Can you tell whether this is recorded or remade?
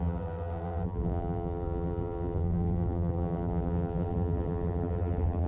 remade